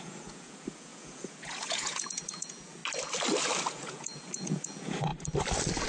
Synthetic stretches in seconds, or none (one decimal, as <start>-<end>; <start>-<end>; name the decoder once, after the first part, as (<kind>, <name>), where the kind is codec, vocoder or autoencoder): 0.0-2.8 (vocoder, Vocos); 3.7-5.1